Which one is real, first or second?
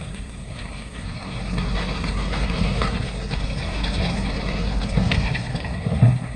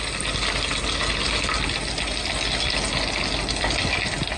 second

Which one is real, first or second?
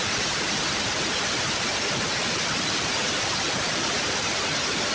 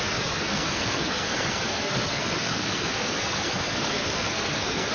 first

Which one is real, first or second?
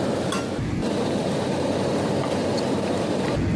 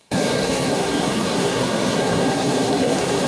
first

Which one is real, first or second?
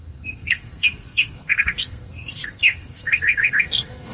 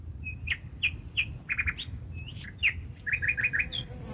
second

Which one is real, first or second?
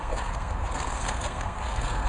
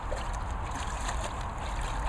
second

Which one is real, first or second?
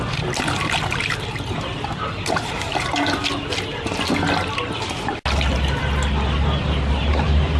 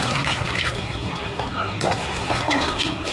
first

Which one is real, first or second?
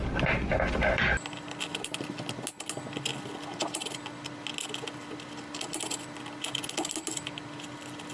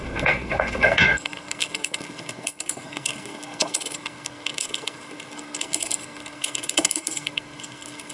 first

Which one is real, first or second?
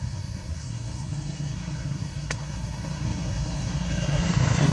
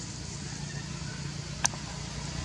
second